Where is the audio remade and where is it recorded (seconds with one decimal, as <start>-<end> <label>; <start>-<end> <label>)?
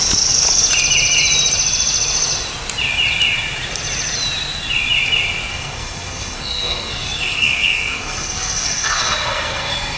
0.0-5.5 recorded; 5.5-10.0 remade